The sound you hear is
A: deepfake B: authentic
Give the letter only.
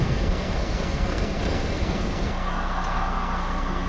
A